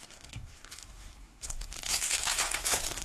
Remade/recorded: remade